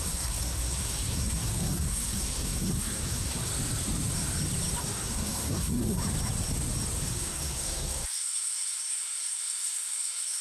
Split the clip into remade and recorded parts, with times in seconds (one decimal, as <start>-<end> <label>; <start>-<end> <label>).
0.0-3.5 remade; 3.5-4.8 recorded; 4.8-6.0 remade; 6.0-7.0 recorded; 7.0-10.4 remade